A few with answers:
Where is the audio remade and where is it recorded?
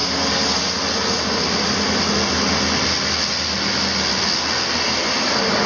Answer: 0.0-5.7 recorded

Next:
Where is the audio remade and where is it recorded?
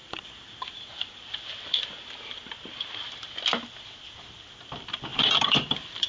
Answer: 0.0-3.3 remade; 3.3-5.1 recorded; 5.1-6.1 remade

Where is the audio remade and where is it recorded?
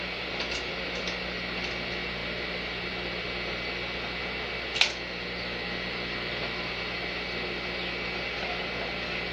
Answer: 0.0-9.3 recorded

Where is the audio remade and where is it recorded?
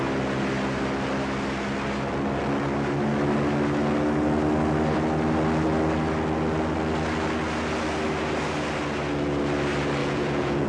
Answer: 0.0-10.0 recorded; 10.0-10.7 remade